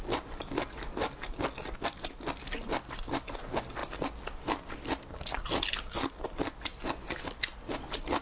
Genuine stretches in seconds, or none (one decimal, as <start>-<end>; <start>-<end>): 0.0-8.2